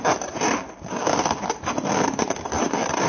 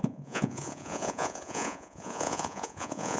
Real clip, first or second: first